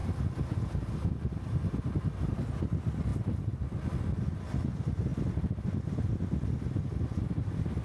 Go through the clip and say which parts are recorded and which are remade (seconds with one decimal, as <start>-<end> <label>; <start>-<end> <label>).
0.0-7.8 recorded